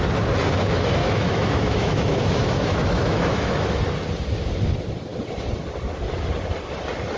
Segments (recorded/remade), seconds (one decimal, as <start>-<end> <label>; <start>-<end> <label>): 0.0-1.0 recorded; 1.0-3.8 remade; 3.8-7.2 recorded